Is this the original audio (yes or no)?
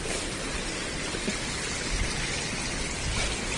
yes